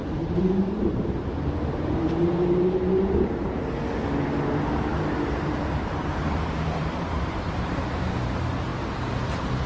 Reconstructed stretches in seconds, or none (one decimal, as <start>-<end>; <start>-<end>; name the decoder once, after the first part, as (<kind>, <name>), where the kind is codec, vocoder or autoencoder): 0.0-3.8 (vocoder, BigVGAN v2); 4.9-7.7